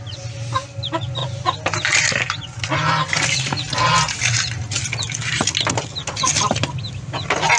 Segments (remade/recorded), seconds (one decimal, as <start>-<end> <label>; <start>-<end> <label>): 0.0-7.6 recorded